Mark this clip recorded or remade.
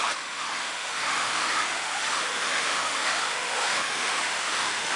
remade